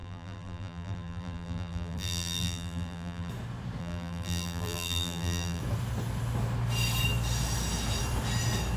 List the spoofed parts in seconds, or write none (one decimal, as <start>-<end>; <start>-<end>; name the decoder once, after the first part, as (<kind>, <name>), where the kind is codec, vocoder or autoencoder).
0.0-3.3 (vocoder, BigVGAN v2); 3.8-5.6